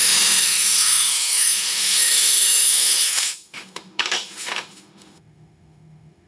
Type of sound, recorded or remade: remade